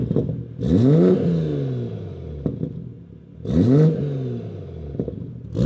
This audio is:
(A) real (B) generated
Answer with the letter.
A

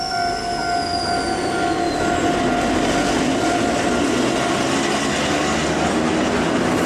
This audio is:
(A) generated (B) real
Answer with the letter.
B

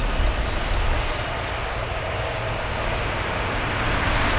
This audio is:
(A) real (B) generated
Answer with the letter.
A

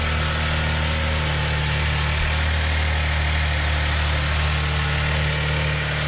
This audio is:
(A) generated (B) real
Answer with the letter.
B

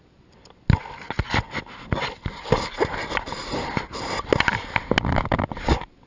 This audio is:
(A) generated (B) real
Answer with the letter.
B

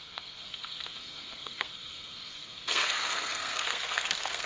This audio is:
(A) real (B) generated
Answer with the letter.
B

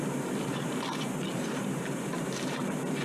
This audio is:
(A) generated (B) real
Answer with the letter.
A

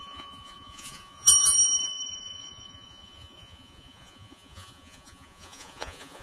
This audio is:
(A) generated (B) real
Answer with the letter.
A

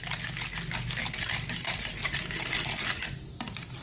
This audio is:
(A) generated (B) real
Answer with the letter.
B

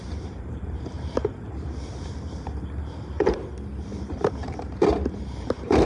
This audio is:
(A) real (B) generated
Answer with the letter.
B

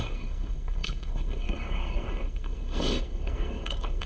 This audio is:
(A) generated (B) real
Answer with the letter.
A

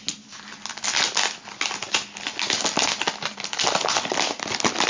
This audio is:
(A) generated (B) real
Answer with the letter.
B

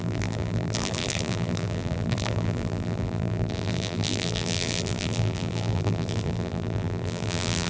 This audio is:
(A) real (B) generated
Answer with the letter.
B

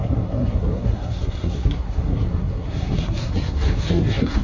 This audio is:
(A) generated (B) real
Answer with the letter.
A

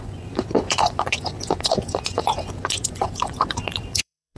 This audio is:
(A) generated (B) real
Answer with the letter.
A